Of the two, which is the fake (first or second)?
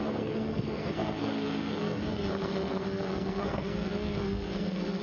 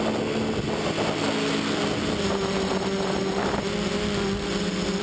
first